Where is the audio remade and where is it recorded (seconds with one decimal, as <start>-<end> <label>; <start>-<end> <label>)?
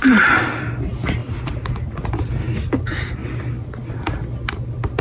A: 0.0-5.0 recorded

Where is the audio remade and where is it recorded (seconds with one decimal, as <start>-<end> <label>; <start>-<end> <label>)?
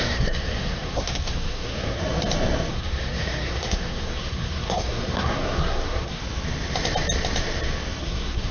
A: 0.0-2.0 remade; 2.0-2.7 recorded; 2.7-6.2 remade; 6.2-8.0 recorded; 8.0-8.5 remade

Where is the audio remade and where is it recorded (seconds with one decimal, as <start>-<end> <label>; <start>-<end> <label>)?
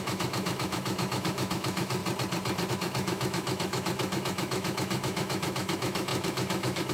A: 0.0-2.0 remade; 2.0-2.7 recorded; 2.7-6.9 remade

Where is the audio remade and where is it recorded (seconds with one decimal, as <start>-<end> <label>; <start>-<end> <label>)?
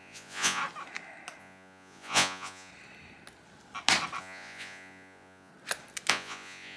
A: 0.0-0.6 remade; 0.6-1.4 recorded; 1.4-2.7 remade; 2.7-4.2 recorded; 4.2-5.5 remade; 5.5-6.1 recorded; 6.1-6.8 remade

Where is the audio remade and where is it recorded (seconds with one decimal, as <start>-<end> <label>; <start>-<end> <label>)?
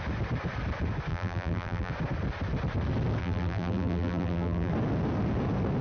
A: 0.0-1.1 recorded; 1.1-1.9 remade; 1.9-3.2 recorded; 3.2-4.7 remade; 4.7-5.8 recorded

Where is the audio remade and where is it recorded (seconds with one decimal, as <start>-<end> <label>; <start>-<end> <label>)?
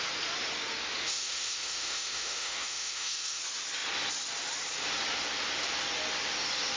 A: 0.0-1.0 recorded; 1.0-3.4 remade; 3.4-6.8 recorded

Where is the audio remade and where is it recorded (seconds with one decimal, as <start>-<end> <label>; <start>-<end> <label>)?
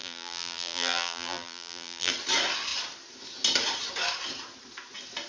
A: 0.0-2.1 remade; 2.1-5.3 recorded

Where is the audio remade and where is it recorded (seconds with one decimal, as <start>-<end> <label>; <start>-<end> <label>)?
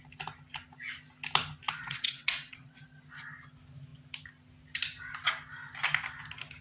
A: 0.0-1.8 recorded; 1.8-2.8 remade; 2.8-6.6 recorded